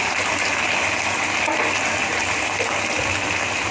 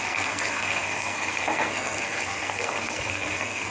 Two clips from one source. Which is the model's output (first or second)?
second